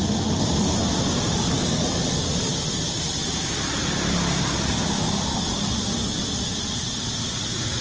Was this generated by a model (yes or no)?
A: no